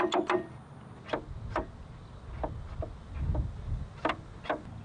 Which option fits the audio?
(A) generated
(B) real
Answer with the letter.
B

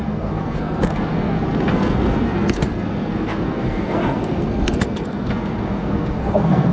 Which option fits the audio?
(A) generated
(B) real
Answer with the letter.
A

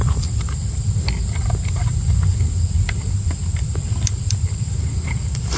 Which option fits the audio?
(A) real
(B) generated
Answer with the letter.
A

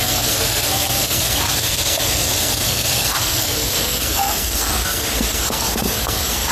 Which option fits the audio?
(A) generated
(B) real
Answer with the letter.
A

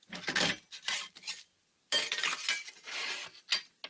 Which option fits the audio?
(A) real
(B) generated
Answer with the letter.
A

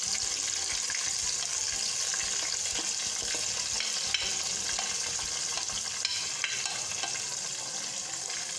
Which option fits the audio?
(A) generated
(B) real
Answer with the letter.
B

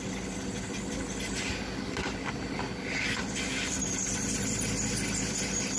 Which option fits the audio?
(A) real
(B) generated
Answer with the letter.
A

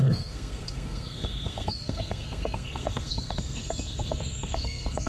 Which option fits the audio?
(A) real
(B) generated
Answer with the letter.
B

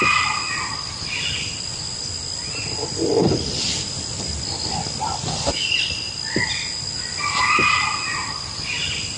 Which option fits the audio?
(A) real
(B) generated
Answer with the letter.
A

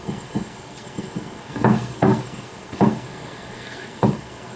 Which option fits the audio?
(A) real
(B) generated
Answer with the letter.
B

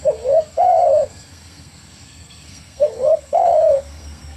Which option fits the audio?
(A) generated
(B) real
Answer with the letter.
A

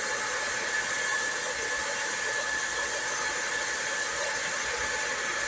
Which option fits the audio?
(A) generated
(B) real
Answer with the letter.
B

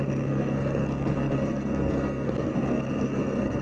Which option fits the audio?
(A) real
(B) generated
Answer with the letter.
B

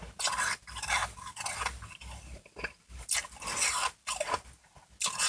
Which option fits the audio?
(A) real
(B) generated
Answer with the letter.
A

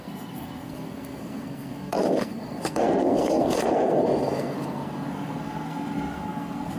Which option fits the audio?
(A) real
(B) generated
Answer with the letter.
B